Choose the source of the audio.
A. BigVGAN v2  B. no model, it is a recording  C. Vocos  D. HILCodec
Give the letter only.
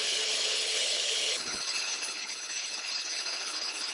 D